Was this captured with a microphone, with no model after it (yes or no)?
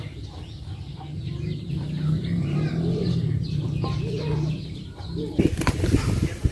yes